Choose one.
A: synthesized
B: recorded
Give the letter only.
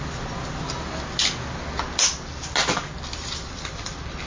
B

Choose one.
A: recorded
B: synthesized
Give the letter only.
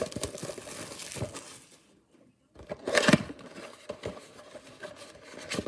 A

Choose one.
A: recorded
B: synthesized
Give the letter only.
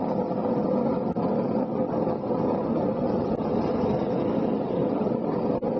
A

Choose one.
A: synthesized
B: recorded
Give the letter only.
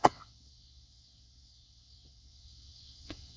A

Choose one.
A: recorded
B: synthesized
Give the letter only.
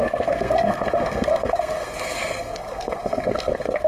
B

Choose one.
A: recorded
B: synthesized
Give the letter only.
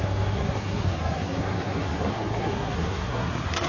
B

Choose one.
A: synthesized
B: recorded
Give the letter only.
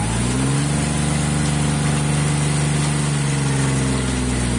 B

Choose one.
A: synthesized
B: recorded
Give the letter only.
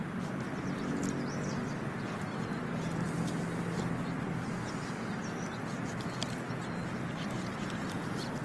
B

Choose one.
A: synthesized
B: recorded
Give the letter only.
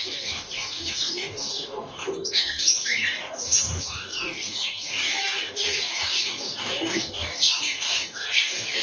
A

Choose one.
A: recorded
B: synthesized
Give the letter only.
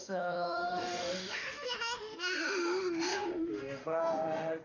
B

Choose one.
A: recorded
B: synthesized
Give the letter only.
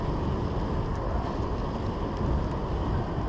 A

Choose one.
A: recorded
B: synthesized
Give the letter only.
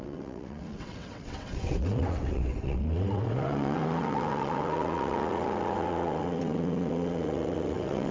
B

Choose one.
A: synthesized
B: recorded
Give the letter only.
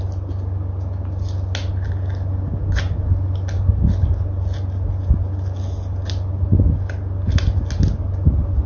B